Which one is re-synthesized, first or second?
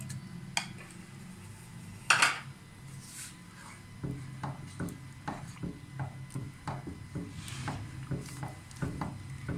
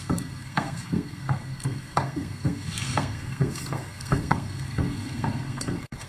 second